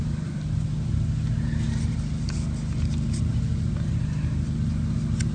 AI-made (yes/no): no